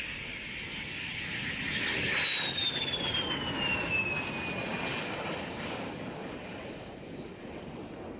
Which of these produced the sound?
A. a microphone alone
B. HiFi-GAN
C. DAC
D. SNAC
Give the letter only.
A